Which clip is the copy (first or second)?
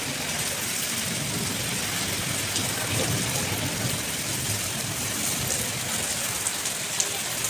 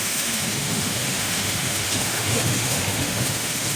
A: second